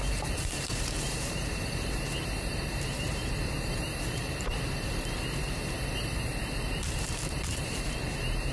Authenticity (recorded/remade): remade